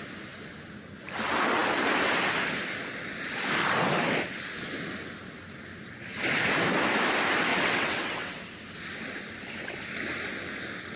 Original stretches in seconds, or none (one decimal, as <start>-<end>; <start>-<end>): 0.0-7.5; 8.4-11.0